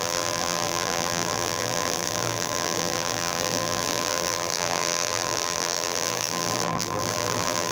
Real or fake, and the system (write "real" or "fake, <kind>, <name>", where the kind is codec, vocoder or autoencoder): fake, vocoder, BigVGAN v2